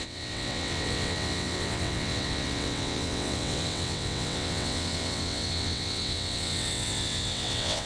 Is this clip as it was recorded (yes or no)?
no